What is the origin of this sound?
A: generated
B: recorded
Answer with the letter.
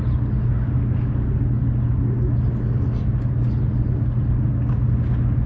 B